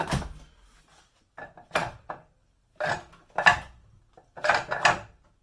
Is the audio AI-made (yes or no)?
no